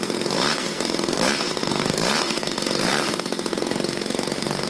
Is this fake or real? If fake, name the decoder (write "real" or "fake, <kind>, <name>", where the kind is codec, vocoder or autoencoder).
fake, codec, SNAC